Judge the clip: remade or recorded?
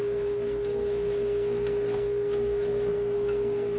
remade